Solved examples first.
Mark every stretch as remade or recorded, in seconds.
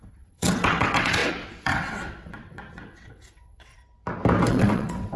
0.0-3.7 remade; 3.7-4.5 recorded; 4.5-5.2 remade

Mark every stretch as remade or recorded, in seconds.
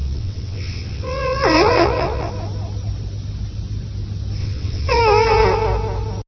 0.0-2.3 remade; 2.3-4.4 recorded; 4.4-5.0 remade; 5.0-6.3 recorded